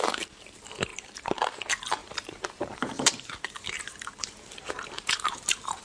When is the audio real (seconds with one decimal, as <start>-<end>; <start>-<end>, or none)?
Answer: 0.0-0.9; 1.6-2.0